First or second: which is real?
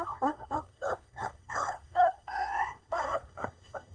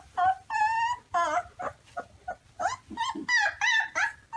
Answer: second